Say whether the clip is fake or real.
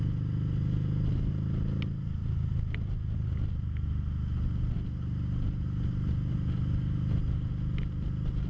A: real